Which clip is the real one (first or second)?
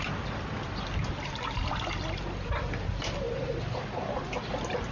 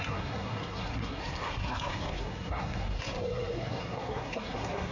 first